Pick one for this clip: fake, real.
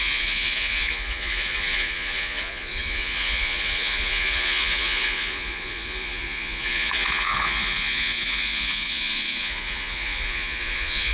fake